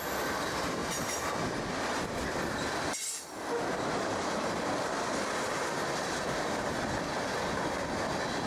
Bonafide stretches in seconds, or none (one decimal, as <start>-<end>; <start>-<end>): 0.0-0.8; 1.3-8.5